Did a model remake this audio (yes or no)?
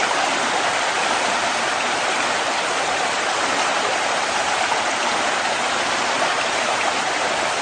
no